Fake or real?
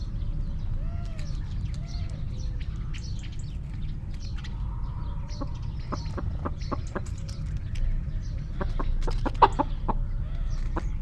real